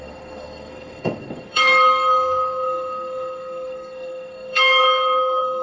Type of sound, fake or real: fake